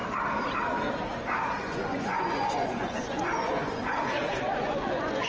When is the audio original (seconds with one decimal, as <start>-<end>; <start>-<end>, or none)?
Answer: 0.0-1.6; 3.8-4.5